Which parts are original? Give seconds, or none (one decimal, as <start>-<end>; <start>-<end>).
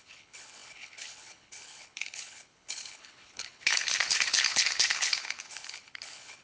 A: none